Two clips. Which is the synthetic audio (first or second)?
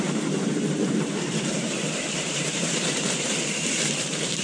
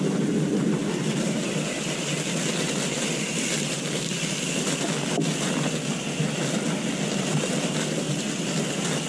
first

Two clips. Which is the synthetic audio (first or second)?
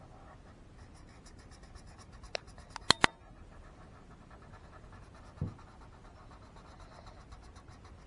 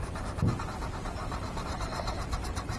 second